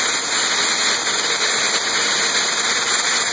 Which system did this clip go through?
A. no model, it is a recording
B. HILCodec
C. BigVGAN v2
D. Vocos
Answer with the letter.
A